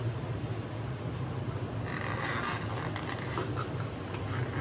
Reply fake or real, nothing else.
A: real